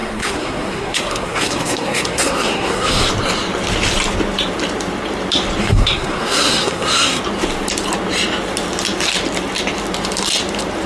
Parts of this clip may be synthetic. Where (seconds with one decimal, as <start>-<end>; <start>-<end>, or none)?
0.0-3.1; 5.6-7.2